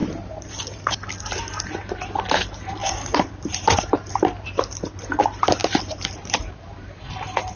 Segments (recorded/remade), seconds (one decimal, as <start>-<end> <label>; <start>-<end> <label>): 0.0-0.9 remade; 0.9-2.8 recorded; 2.8-4.7 remade; 4.7-5.6 recorded; 5.6-7.1 remade; 7.1-7.6 recorded